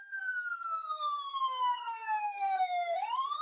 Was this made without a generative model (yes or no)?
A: no